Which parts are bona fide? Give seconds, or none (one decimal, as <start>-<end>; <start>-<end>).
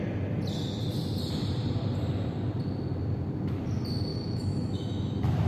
0.0-4.1; 5.1-5.5